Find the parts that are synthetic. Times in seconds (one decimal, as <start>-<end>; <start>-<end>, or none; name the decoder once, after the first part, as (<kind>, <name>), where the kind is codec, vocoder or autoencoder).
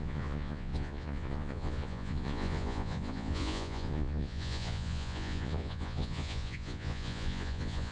0.0-7.9 (vocoder, Vocos)